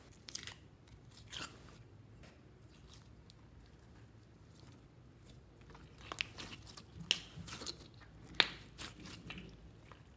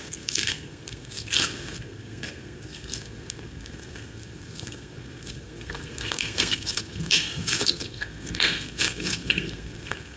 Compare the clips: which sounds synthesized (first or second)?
second